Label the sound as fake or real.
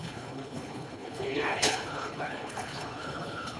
fake